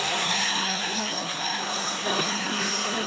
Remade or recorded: remade